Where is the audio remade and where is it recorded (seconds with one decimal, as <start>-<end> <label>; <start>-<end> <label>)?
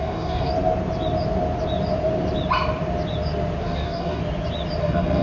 0.0-0.5 remade; 0.5-3.6 recorded; 3.6-4.2 remade; 4.2-4.8 recorded; 4.8-5.2 remade